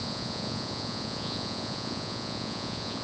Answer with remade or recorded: remade